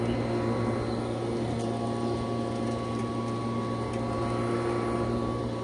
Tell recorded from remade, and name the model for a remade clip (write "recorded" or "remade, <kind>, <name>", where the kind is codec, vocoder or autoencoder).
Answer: recorded